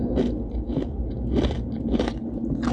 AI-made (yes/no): no